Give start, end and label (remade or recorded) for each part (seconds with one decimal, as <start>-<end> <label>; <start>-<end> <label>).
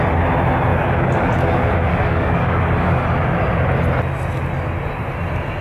0.0-0.7 recorded; 0.7-1.3 remade; 1.3-1.9 recorded; 1.9-3.0 remade; 3.0-5.6 recorded